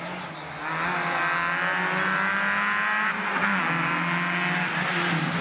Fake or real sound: real